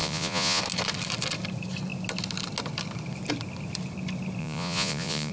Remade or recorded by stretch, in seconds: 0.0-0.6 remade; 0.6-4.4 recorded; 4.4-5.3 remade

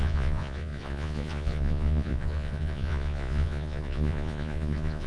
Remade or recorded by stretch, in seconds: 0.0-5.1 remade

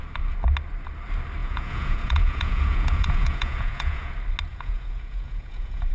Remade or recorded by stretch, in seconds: 0.0-1.4 recorded; 1.4-4.1 remade; 4.1-4.5 recorded; 4.5-5.9 remade